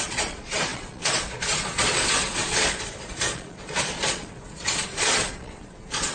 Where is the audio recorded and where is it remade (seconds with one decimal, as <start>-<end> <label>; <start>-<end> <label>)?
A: 0.0-6.1 remade